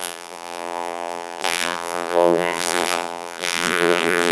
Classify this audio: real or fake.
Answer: fake